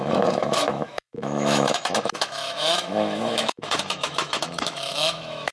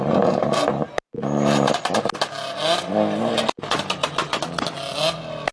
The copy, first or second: first